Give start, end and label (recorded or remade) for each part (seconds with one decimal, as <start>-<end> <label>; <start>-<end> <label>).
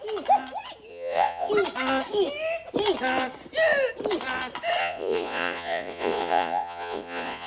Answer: 0.0-0.9 recorded; 0.9-1.5 remade; 1.5-4.8 recorded; 4.8-7.5 remade